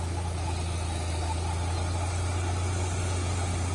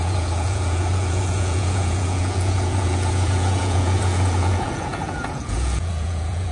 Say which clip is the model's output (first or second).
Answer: second